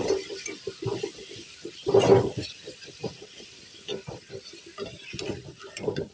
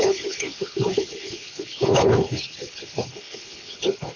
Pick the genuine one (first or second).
first